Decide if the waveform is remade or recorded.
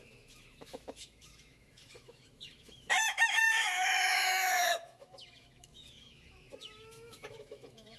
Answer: remade